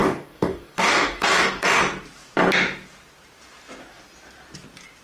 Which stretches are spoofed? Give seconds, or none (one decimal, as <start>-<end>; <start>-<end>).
0.0-1.8